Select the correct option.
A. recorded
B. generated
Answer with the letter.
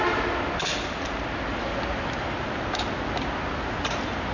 A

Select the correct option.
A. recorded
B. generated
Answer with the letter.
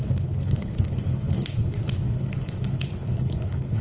B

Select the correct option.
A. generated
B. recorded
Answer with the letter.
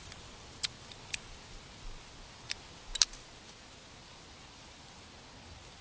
B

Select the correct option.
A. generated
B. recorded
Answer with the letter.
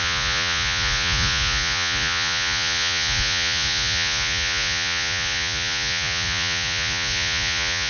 A